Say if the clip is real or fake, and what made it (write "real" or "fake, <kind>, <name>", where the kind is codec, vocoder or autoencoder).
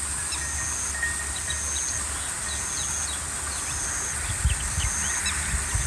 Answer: real